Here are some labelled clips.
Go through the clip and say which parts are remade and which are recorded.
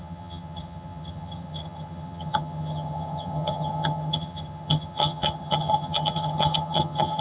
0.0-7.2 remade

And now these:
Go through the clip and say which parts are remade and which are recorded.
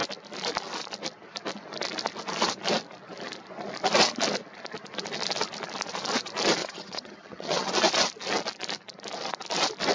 0.0-6.6 recorded; 6.6-7.7 remade; 7.7-9.9 recorded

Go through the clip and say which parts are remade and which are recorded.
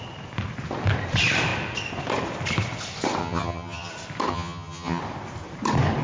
0.0-3.2 recorded; 3.2-3.9 remade; 3.9-4.3 recorded; 4.3-5.0 remade; 5.0-6.0 recorded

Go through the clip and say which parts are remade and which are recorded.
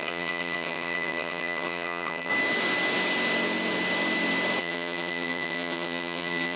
0.0-2.3 remade; 2.3-4.6 recorded; 4.6-6.6 remade